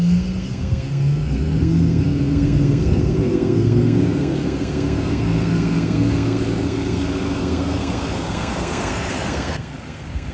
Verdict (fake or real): fake